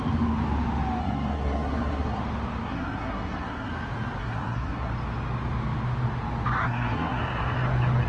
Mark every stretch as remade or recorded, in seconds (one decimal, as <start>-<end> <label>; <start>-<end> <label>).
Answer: 0.0-1.0 recorded; 1.0-2.2 remade; 2.2-2.6 recorded; 2.6-3.7 remade; 3.7-4.2 recorded; 4.2-4.9 remade; 4.9-6.6 recorded; 6.6-7.2 remade; 7.2-8.1 recorded